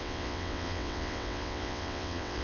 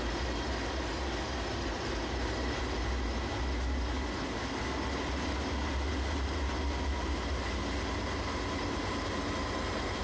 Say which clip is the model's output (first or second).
first